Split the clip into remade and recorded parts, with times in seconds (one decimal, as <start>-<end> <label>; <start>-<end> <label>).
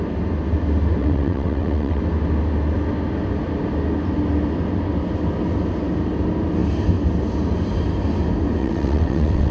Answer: 0.0-1.0 recorded; 1.0-2.0 remade; 2.0-8.6 recorded; 8.6-9.5 remade